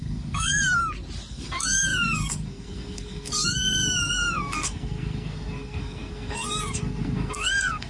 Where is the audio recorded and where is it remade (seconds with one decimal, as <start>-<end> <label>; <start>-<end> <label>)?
0.0-0.8 remade; 0.8-1.3 recorded; 1.3-7.9 remade